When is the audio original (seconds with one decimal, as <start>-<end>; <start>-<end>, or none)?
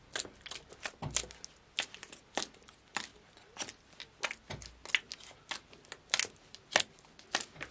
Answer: 0.0-7.7